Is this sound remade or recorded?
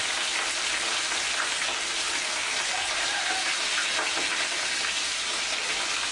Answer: recorded